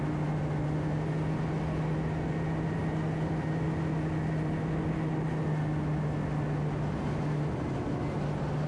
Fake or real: real